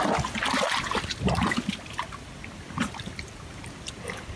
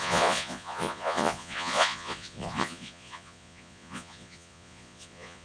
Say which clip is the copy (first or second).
second